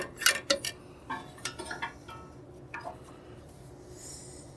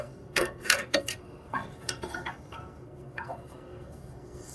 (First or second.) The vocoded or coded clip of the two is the second